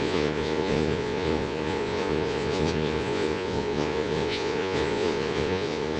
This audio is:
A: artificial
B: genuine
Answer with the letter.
A